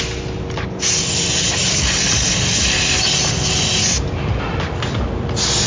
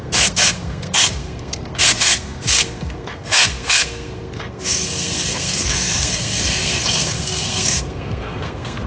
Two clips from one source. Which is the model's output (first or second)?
second